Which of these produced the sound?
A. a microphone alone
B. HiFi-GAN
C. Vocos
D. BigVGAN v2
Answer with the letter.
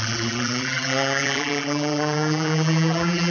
D